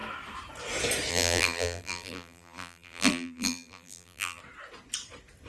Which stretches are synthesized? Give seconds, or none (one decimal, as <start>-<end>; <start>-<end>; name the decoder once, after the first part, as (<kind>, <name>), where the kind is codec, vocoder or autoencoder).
1.1-4.4 (vocoder, BigVGAN v2)